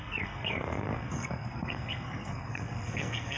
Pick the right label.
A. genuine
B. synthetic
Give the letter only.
B